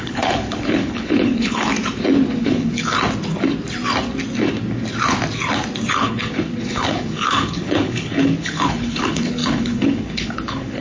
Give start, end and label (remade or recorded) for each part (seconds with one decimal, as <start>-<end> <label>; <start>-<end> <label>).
0.0-1.7 remade; 1.7-2.4 recorded; 2.4-2.9 remade; 2.9-5.9 recorded; 5.9-10.8 remade